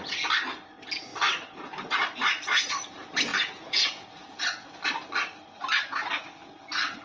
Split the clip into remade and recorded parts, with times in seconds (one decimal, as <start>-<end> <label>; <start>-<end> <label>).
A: 0.0-3.3 recorded; 3.3-4.4 remade; 4.4-7.0 recorded